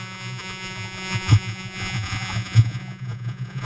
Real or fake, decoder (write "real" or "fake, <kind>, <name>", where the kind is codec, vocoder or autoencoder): fake, vocoder, Vocos